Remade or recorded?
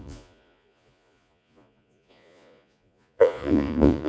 remade